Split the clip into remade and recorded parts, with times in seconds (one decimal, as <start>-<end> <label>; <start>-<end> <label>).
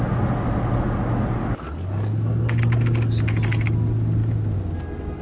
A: 0.0-5.2 recorded